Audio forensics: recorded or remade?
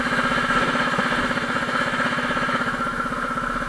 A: remade